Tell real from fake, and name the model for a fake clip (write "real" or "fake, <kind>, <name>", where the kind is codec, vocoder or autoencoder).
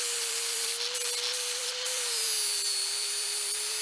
fake, vocoder, BigVGAN v2